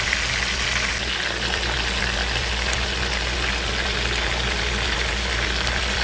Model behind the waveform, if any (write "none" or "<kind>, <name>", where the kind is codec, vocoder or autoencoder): none